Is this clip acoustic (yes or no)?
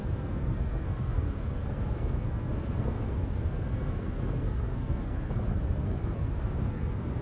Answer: no